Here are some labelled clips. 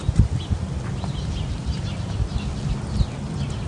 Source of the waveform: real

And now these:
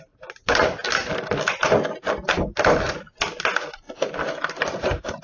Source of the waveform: real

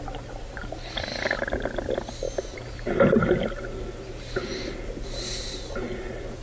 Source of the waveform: real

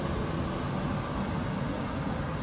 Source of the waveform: real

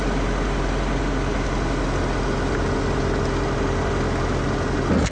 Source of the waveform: real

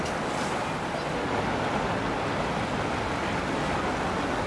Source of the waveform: real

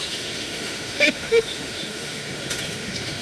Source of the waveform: fake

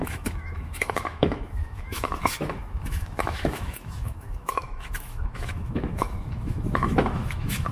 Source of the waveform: fake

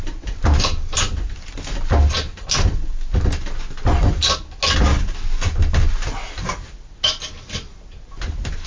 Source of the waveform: real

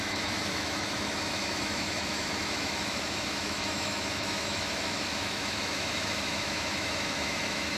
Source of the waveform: fake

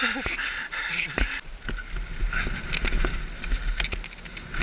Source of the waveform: real